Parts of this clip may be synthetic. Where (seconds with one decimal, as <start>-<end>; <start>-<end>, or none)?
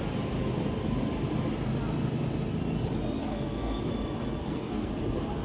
3.2-3.9; 4.4-4.9